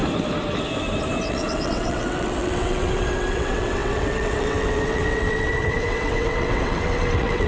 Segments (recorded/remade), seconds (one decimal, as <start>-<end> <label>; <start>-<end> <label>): 0.0-1.3 recorded; 1.3-7.5 remade